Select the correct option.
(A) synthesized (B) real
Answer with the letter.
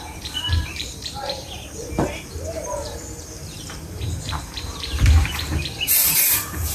A